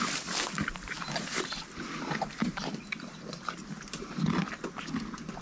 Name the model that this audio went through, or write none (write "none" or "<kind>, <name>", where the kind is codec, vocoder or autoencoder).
none